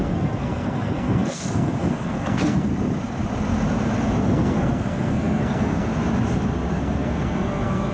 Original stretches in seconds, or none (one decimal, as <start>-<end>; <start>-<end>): 2.7-4.2; 5.9-6.7